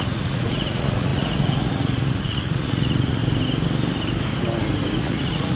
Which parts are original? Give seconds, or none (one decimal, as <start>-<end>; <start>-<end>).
3.2-5.0

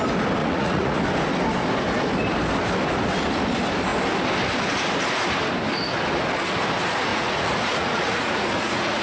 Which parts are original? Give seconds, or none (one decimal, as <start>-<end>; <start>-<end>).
0.0-0.4; 1.0-7.1